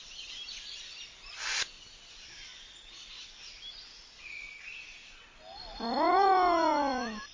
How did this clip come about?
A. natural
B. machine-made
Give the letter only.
A